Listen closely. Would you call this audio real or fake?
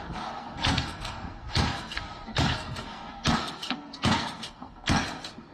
fake